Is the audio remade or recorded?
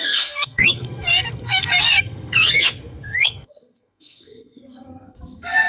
remade